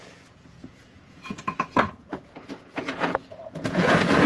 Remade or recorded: remade